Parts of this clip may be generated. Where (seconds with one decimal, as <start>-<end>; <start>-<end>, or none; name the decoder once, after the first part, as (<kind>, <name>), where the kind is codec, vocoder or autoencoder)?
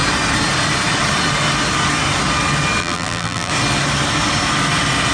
2.8-3.5 (vocoder, BigVGAN v2)